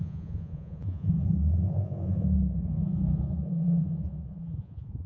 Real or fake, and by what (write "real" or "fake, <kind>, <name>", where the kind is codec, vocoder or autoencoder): fake, vocoder, Vocos